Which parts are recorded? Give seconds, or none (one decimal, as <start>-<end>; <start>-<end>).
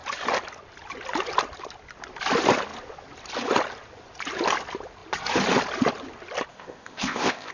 0.0-6.5